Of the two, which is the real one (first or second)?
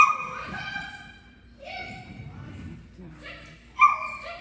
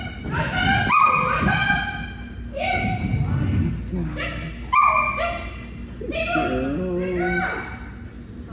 second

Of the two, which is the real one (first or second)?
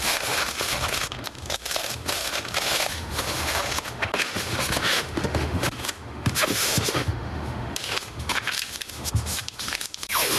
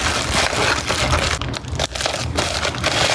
second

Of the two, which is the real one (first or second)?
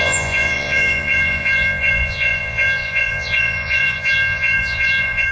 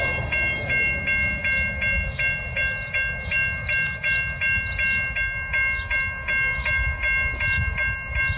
second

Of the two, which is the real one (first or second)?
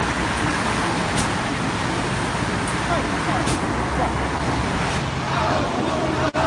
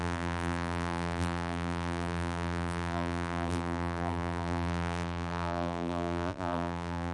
first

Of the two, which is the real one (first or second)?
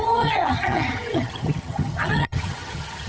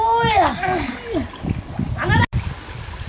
second